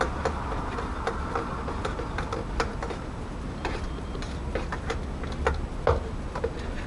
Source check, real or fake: real